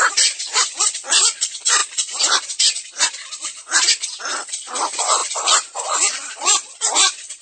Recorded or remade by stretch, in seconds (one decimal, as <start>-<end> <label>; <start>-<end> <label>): 0.0-7.4 remade